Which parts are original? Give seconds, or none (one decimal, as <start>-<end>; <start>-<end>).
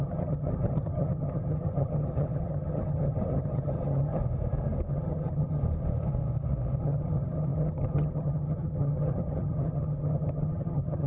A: 4.2-4.9; 5.6-6.8